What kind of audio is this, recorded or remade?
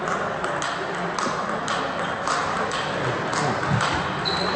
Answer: recorded